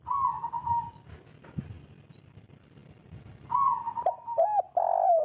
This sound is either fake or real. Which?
real